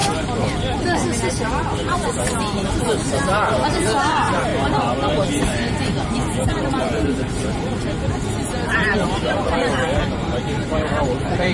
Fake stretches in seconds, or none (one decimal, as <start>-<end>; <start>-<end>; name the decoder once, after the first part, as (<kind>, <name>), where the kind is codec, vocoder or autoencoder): 2.7-4.5 (vocoder, BigVGAN v2); 5.4-11.5